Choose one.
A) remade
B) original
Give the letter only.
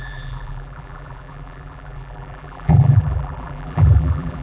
A